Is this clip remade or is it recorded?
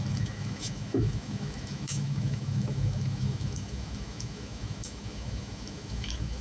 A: remade